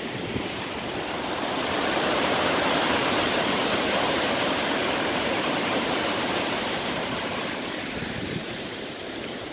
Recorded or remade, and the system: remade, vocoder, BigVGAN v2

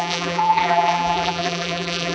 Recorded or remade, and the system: remade, vocoder, BigVGAN v2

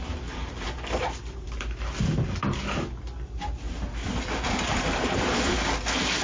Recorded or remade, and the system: recorded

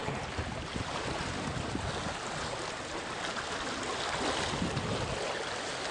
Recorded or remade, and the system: recorded